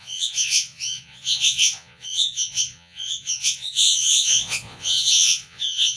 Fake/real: fake